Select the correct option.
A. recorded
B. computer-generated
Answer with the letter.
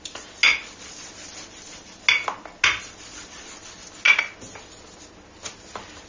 A